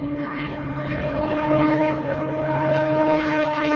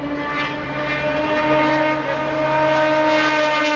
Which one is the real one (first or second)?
second